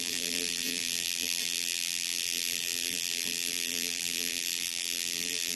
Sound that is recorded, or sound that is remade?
remade